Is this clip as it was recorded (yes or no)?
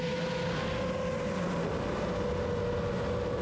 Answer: yes